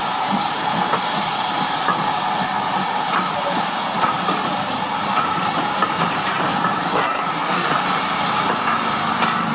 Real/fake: fake